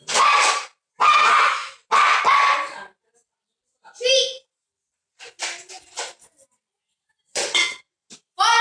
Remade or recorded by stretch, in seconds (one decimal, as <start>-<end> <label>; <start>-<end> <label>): 0.0-7.3 recorded; 7.3-8.1 remade; 8.1-8.6 recorded